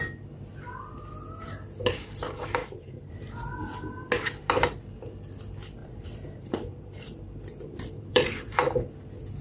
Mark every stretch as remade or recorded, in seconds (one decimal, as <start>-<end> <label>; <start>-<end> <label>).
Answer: 0.0-2.6 recorded; 2.6-3.1 remade; 3.1-5.8 recorded; 5.8-8.9 remade; 8.9-9.4 recorded